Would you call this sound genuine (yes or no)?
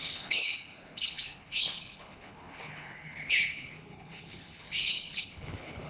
no